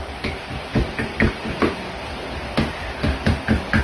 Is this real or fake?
real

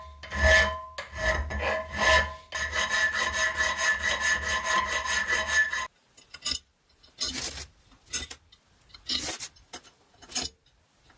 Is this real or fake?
real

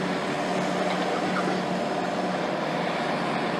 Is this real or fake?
real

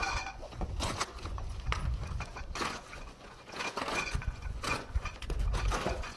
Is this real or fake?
fake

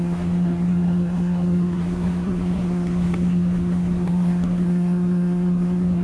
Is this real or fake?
fake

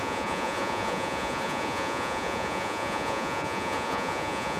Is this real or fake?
fake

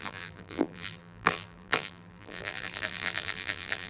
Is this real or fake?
fake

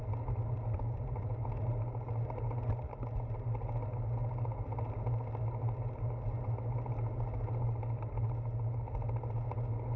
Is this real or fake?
real